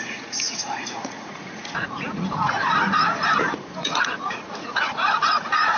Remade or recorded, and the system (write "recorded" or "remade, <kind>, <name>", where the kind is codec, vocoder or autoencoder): remade, vocoder, Vocos